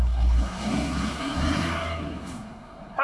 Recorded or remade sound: remade